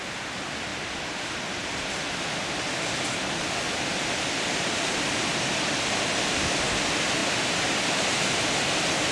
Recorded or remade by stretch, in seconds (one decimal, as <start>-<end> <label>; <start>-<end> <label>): 0.0-9.1 recorded